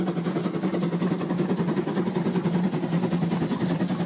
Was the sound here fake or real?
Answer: real